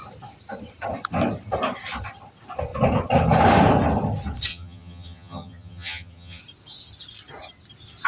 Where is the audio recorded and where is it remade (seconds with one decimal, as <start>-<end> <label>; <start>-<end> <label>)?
0.0-4.5 recorded; 4.5-6.4 remade; 6.4-8.1 recorded